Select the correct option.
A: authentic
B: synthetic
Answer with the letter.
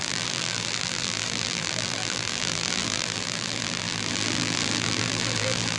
B